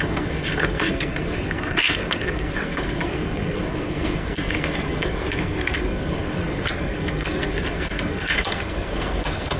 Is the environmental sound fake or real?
fake